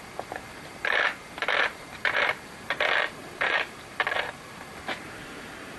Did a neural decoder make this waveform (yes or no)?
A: yes